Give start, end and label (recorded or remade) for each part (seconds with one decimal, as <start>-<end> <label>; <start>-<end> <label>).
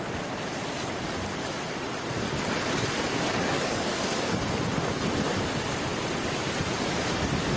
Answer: 0.0-3.3 recorded; 3.3-4.3 remade; 4.3-7.6 recorded